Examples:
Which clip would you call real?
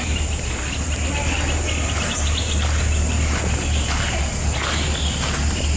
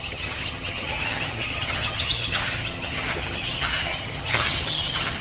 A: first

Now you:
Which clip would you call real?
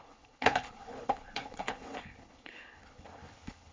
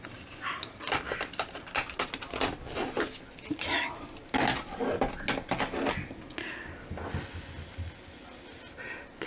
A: second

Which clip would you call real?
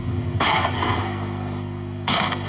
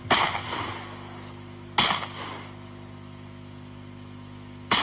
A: second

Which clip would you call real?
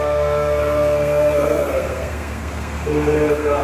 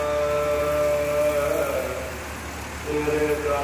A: second